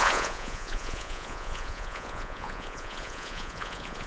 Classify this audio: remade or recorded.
remade